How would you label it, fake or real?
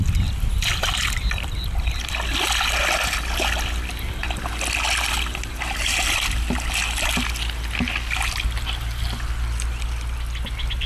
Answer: real